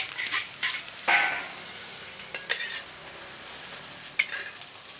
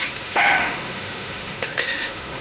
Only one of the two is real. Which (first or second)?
first